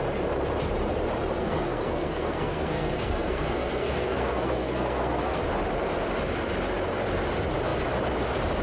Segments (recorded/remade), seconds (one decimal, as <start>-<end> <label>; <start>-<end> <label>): 0.0-1.4 recorded; 1.4-5.4 remade; 5.4-8.6 recorded